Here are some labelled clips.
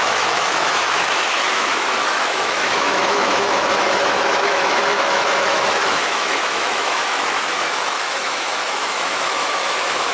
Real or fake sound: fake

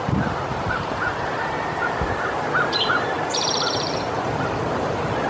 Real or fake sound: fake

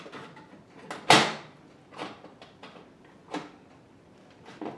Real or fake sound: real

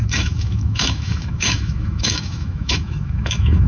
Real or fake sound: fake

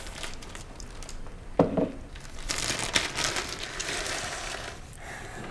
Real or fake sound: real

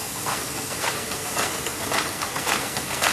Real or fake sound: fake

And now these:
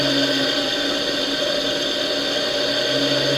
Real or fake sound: real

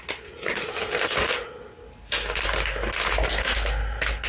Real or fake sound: real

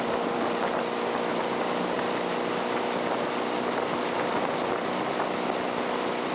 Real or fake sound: real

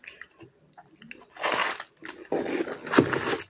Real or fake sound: real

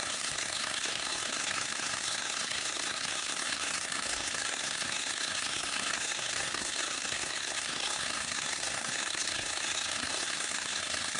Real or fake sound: fake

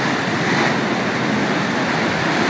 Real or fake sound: real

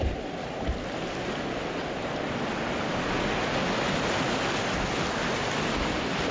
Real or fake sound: real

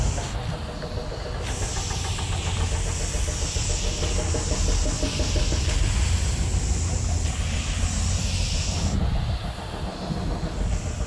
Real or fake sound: real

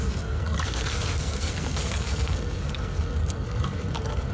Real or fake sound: fake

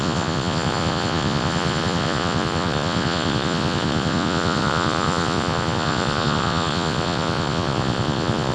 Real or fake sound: fake